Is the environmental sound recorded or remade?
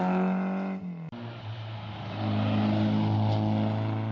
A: recorded